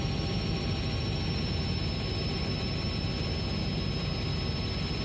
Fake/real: real